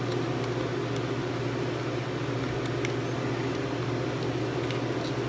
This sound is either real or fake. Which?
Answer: real